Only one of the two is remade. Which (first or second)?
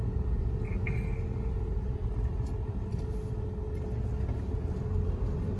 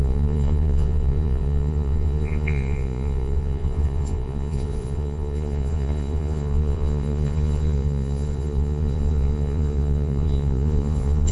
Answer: second